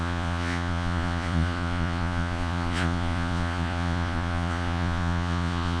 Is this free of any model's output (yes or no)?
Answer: no